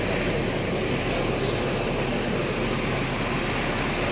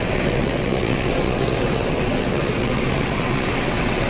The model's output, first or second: second